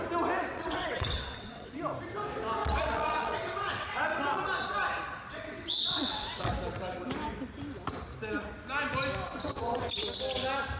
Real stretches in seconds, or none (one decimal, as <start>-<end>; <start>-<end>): 0.0-0.4; 1.8-2.6; 4.4-5.3; 6.5-9.4; 9.9-10.8

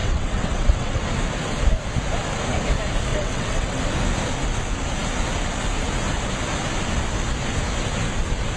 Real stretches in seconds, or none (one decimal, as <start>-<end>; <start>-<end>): 1.0-3.1; 3.8-8.6

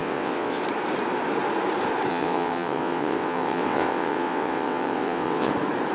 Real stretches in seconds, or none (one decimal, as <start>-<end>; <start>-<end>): 0.6-2.1; 5.5-5.9

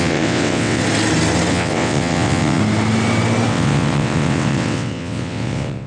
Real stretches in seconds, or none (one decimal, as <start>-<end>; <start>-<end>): 0.8-1.5; 2.6-3.5

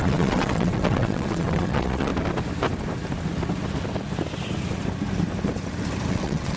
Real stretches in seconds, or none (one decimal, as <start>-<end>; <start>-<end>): 2.1-6.1

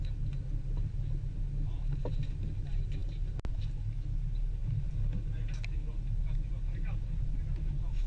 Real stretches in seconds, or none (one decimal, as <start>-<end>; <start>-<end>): 0.0-8.1

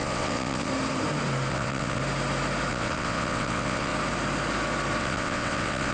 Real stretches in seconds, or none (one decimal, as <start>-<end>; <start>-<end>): 0.7-1.5; 2.0-2.7; 3.9-5.0

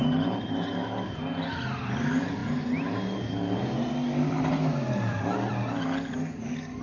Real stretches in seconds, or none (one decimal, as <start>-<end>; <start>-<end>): 0.0-6.8